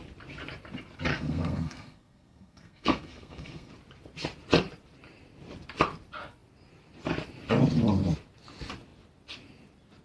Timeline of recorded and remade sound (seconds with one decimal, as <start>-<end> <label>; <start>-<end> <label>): 0.0-1.1 recorded; 1.1-3.7 remade; 3.7-10.0 recorded